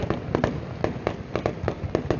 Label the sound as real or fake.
real